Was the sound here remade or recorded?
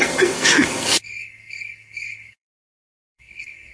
remade